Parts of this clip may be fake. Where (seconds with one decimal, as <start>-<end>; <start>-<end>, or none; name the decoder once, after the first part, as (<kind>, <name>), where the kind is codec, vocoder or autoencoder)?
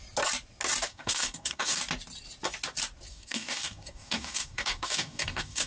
0.9-1.8 (codec, DAC); 3.1-5.7